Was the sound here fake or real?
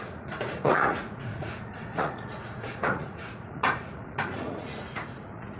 fake